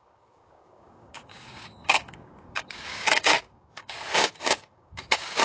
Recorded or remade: remade